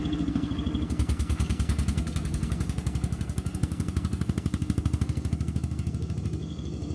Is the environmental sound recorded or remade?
remade